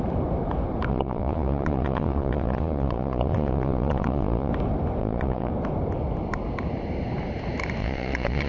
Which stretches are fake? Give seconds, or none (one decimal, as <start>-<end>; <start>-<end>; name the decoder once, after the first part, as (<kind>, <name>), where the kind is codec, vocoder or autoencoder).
0.9-4.5 (vocoder, Vocos); 5.0-5.5; 7.8-8.5